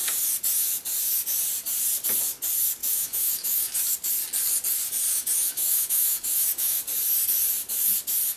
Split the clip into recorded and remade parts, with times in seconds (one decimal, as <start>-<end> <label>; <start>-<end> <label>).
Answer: 0.0-2.8 recorded; 2.8-3.8 remade; 3.8-5.1 recorded; 5.1-6.8 remade; 6.8-8.4 recorded